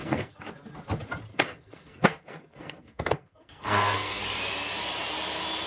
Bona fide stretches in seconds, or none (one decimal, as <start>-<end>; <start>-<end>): 0.5-1.3; 4.2-5.7

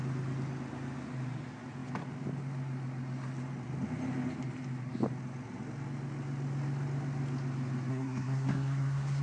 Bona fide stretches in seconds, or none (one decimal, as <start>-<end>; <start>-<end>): 0.0-7.9

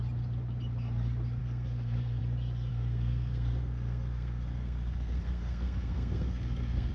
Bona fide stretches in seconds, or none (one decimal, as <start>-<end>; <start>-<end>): 0.0-1.4; 2.2-2.7